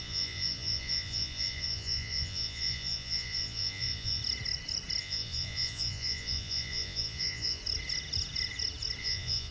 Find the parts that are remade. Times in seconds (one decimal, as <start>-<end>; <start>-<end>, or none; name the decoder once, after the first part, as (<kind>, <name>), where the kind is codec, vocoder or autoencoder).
0.0-4.2 (vocoder, Vocos); 5.0-7.6; 9.0-9.5